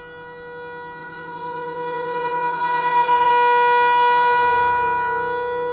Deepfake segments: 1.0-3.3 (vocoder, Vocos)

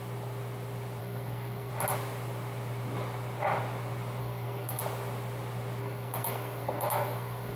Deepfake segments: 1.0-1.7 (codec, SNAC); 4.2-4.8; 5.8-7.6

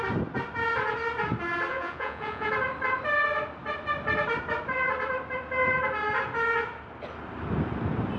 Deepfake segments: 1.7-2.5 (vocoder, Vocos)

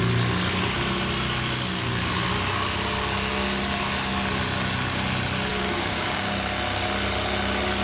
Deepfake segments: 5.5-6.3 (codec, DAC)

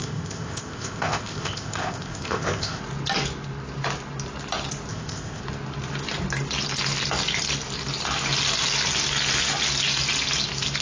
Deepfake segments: 0.0-2.8 (codec, ZipCodec); 4.9-5.4